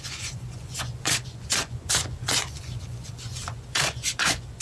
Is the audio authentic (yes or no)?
no